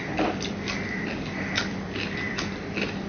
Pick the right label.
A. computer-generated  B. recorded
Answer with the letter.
B